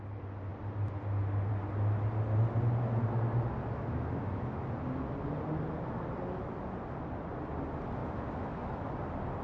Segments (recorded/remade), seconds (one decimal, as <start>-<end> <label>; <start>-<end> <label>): 0.0-3.6 recorded; 3.6-4.7 remade; 4.7-8.0 recorded; 8.0-8.9 remade; 8.9-9.4 recorded